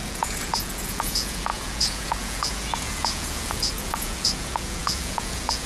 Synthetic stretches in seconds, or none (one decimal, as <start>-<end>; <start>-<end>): 0.0-5.7